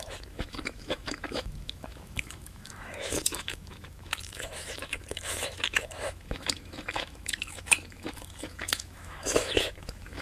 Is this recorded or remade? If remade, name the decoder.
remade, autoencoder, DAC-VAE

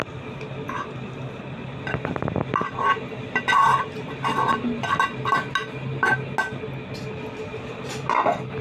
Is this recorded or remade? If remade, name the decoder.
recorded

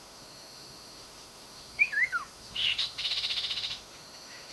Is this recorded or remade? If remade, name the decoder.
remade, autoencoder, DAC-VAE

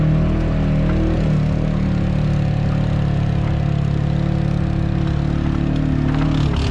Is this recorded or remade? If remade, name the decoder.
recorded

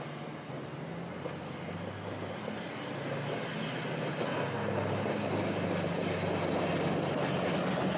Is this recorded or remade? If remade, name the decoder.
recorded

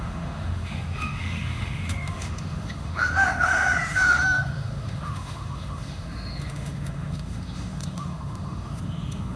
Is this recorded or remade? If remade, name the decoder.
remade, autoencoder, DAC-VAE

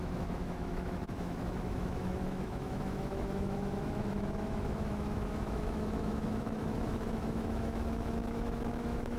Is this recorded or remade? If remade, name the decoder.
remade, autoencoder, DAC-VAE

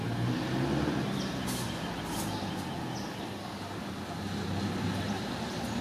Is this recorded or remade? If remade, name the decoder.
recorded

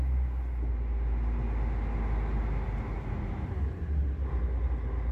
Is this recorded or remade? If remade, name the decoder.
recorded